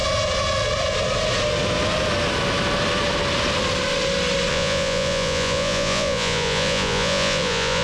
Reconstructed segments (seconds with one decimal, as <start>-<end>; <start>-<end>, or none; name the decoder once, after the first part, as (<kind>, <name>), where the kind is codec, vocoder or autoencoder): 4.5-7.8 (vocoder, Vocos)